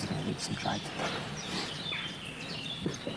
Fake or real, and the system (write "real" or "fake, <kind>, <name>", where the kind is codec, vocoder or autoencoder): fake, vocoder, BigVGAN v2